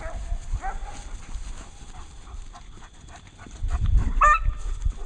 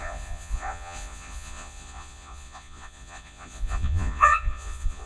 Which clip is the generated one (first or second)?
second